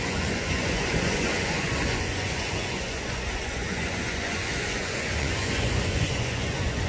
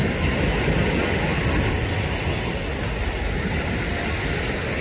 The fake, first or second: first